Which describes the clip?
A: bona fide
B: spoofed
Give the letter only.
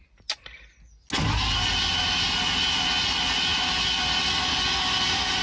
A